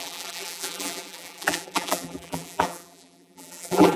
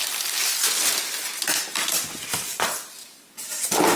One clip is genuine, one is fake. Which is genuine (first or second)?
second